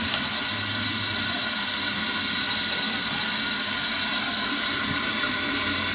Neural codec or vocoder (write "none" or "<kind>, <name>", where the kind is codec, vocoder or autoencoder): none